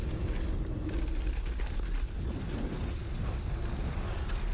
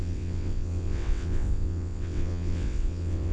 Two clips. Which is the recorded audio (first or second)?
first